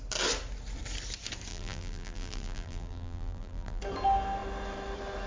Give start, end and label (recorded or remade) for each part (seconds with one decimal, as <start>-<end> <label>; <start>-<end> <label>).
0.0-1.5 recorded; 1.5-3.8 remade; 3.8-5.3 recorded